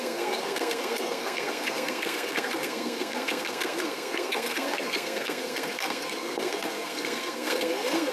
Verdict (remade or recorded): remade